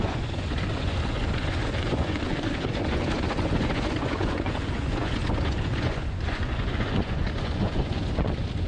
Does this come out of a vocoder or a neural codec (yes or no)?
yes